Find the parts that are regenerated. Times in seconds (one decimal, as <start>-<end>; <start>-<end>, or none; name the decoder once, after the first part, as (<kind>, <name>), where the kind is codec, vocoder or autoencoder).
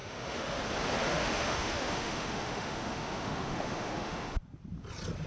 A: 0.0-0.6 (autoencoder, DAC-VAE); 1.1-4.3